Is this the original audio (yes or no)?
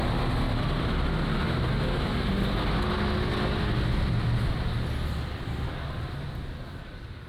yes